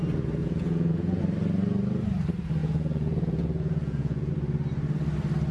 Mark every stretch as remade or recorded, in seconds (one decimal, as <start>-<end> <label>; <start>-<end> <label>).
0.0-0.4 recorded; 0.4-1.2 remade; 1.2-2.6 recorded; 2.6-4.3 remade; 4.3-5.5 recorded